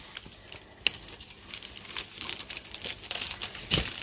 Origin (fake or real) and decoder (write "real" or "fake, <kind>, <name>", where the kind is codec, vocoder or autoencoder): real